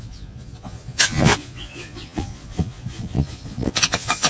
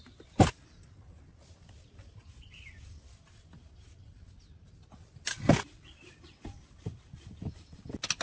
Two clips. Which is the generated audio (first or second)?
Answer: first